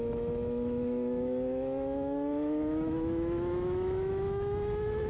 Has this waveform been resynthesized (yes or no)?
yes